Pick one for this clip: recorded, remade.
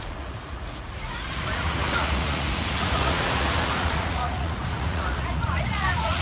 remade